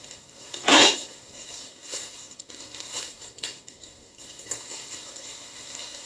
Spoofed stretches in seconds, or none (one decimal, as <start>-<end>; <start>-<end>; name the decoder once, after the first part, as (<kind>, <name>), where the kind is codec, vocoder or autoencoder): 0.0-6.1 (codec, SNAC)